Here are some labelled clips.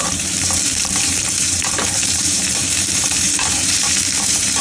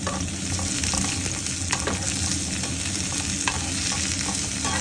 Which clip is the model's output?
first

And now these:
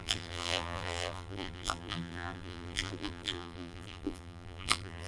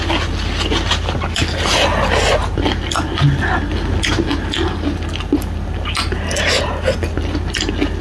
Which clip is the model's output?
first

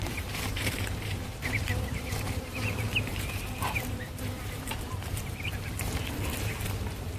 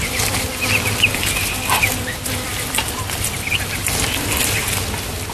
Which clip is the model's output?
first